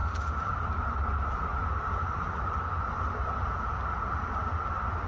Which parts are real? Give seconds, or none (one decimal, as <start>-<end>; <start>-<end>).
0.5-5.1